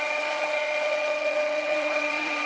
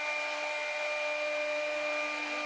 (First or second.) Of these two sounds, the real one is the second